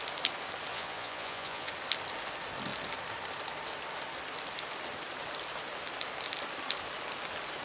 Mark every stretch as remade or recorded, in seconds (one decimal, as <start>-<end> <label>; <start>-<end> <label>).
0.0-0.7 recorded; 0.7-1.7 remade; 1.7-7.6 recorded